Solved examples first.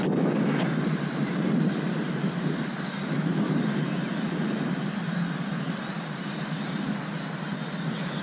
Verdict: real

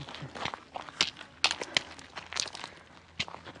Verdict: real